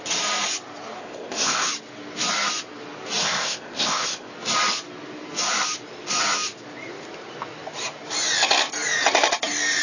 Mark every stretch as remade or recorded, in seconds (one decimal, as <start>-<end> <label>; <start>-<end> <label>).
0.0-1.0 recorded; 1.0-1.7 remade; 1.7-3.2 recorded; 3.2-4.3 remade; 4.3-9.8 recorded